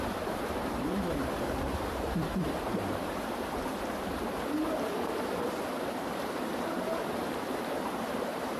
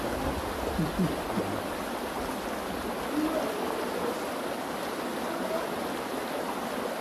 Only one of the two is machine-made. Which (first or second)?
first